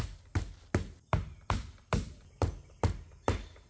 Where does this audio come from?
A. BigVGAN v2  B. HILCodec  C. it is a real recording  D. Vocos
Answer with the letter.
C